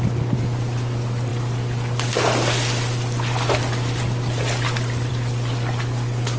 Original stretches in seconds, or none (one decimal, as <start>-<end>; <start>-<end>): 0.0-6.4